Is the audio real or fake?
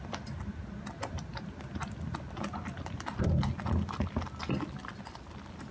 real